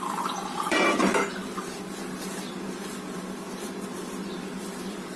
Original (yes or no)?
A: no